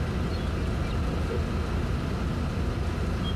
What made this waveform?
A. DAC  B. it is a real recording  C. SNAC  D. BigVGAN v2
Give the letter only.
B